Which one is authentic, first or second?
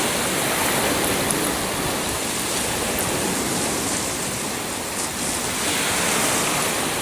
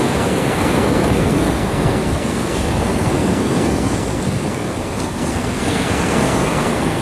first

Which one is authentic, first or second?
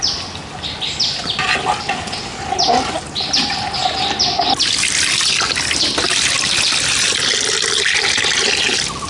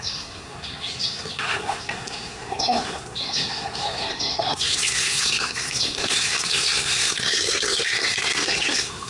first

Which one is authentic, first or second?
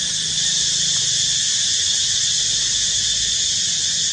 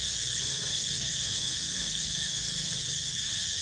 first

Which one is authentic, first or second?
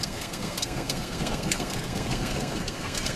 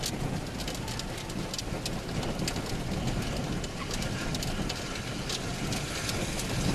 second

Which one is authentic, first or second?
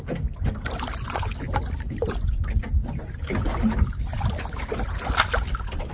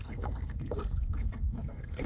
first